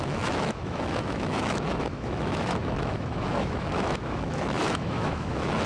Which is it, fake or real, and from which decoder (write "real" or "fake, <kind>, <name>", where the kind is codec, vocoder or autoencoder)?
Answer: fake, autoencoder, DAC-VAE